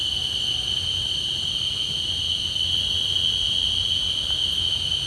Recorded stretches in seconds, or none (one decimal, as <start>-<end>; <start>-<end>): 0.0-5.1